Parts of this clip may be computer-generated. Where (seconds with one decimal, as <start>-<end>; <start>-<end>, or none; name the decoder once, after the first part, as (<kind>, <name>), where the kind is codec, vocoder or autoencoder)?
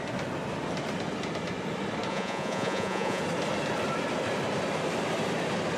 2.1-3.2 (vocoder, Vocos)